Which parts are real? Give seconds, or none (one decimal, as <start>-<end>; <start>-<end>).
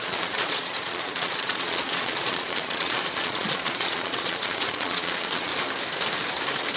5.5-6.8